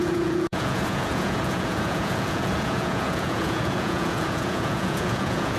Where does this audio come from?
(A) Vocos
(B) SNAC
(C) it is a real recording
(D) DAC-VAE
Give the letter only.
A